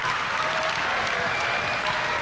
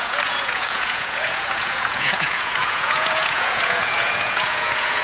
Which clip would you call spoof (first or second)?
second